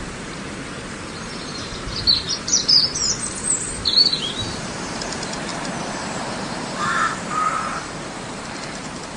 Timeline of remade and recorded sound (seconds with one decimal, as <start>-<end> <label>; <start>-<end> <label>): 0.0-9.2 remade